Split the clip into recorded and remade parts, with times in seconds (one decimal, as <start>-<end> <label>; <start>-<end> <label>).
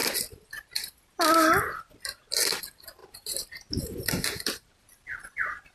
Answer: 0.0-3.0 recorded; 3.0-4.9 remade; 4.9-5.7 recorded